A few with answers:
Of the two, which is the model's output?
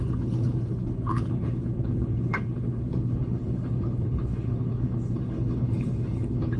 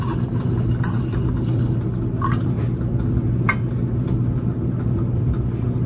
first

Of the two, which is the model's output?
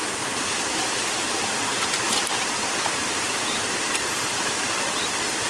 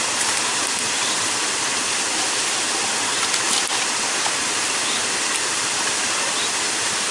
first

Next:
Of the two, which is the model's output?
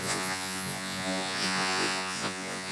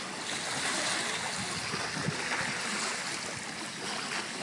first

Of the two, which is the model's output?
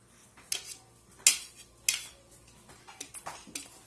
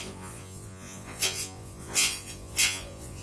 second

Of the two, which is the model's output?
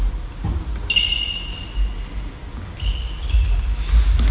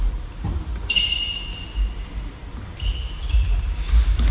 second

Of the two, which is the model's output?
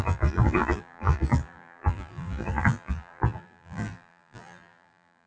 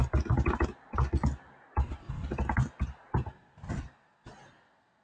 first